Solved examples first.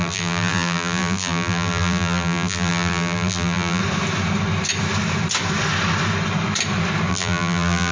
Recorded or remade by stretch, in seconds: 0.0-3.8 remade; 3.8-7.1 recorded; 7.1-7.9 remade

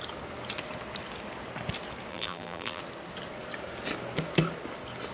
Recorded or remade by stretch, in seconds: 0.0-2.1 recorded; 2.1-2.8 remade; 2.8-5.1 recorded

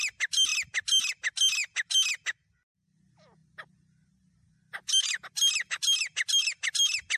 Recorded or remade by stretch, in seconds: 0.0-7.2 recorded

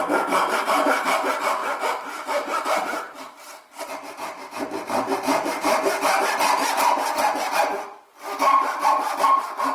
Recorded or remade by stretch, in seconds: 0.0-1.6 recorded; 1.6-6.2 remade; 6.2-9.7 recorded

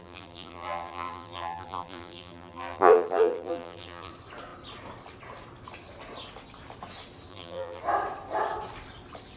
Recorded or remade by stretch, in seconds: 0.0-4.1 remade; 4.1-7.3 recorded; 7.3-7.8 remade; 7.8-9.4 recorded

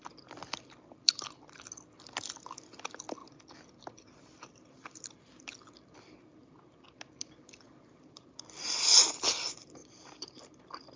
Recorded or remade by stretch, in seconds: 0.0-0.4 recorded; 0.4-1.6 remade; 1.6-3.2 recorded; 3.2-4.7 remade; 4.7-9.8 recorded; 9.8-10.4 remade; 10.4-11.0 recorded

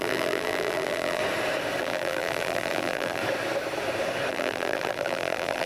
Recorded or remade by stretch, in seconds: 0.0-1.2 remade; 1.2-1.8 recorded; 1.8-3.2 remade; 3.2-4.3 recorded; 4.3-5.7 remade

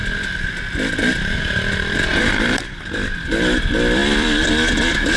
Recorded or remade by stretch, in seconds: 0.0-0.5 remade; 0.5-2.1 recorded; 2.1-2.8 remade; 2.8-4.0 recorded; 4.0-4.5 remade; 4.5-5.2 recorded